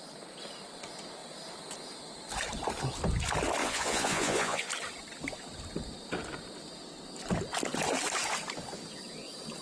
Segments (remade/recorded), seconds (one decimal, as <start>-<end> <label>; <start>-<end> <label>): 0.0-3.6 recorded; 3.6-4.7 remade; 4.7-9.6 recorded